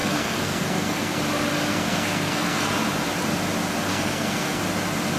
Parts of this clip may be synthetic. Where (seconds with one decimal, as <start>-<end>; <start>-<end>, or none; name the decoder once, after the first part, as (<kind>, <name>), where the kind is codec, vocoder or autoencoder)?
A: 0.0-1.2 (codec, SNAC); 1.7-2.7; 3.9-4.6